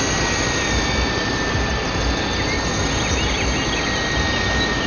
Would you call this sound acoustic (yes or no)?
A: yes